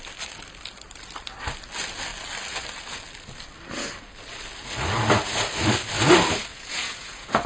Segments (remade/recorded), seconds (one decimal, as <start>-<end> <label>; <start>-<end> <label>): 0.0-6.5 recorded; 6.5-7.5 remade

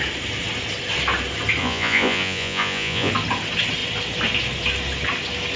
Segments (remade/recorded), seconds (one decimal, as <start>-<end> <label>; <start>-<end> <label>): 0.0-1.6 recorded; 1.6-3.1 remade; 3.1-5.6 recorded